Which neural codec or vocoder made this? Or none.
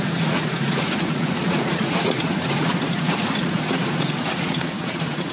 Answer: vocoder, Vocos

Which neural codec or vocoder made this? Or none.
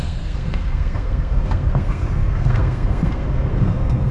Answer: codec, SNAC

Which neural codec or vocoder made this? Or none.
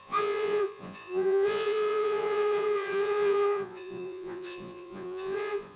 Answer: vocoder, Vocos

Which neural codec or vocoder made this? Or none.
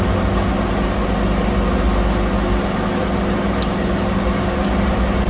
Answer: none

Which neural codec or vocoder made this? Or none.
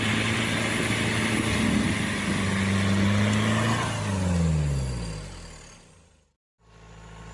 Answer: none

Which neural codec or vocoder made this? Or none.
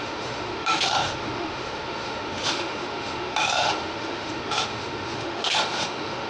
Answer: autoencoder, DAC-VAE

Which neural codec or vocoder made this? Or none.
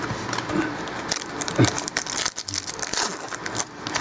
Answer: none